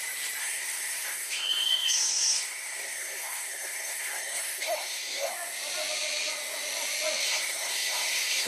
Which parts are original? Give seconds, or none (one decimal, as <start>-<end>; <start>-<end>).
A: 0.0-0.4; 5.3-7.2